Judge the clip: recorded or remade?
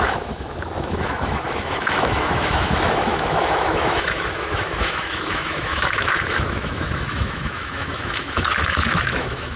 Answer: remade